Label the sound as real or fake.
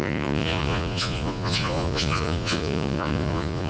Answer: fake